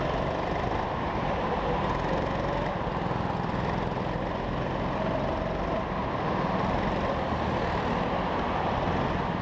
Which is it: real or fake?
real